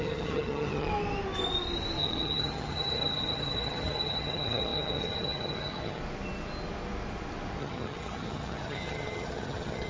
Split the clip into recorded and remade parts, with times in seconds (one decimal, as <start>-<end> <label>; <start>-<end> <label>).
0.0-0.9 remade; 0.9-2.0 recorded; 2.0-6.0 remade; 6.0-7.6 recorded; 7.6-9.9 remade